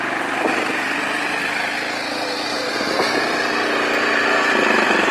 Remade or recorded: recorded